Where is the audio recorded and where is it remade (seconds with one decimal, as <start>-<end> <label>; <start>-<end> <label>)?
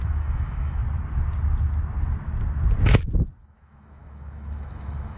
0.0-0.8 remade; 0.8-3.4 recorded; 3.4-5.2 remade